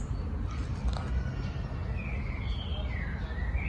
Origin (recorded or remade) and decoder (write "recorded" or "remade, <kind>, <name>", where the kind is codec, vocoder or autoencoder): recorded